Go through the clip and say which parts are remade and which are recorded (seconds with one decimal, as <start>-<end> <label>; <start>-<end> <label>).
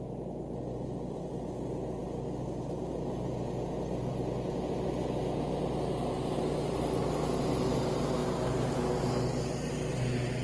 0.0-10.4 recorded